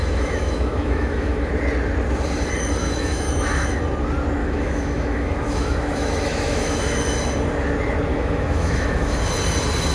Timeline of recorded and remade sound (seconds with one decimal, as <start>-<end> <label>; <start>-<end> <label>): 0.0-1.5 remade; 1.5-2.8 recorded; 2.8-3.7 remade; 3.7-4.4 recorded; 4.4-6.8 remade; 6.8-8.1 recorded; 8.1-9.2 remade; 9.2-9.9 recorded

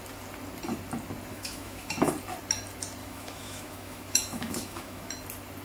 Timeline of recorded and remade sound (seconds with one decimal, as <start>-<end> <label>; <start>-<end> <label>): 0.0-1.3 recorded; 1.3-2.1 remade; 2.1-3.0 recorded; 3.0-5.1 remade; 5.1-5.6 recorded